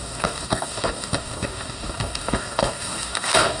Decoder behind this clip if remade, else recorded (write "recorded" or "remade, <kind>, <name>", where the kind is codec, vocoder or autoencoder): remade, codec, DAC